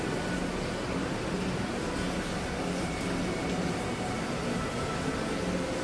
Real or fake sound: real